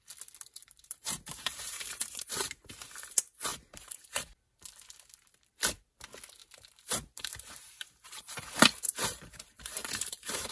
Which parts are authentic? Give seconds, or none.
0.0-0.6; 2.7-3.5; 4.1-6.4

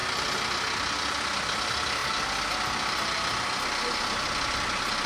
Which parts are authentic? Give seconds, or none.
0.0-5.1